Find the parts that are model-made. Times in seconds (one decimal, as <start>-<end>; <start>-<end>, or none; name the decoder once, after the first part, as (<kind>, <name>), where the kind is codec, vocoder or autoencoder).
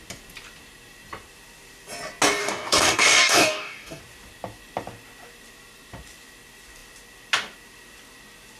2.4-4.0 (codec, DAC)